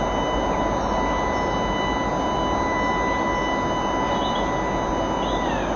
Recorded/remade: recorded